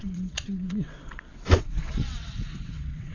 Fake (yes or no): yes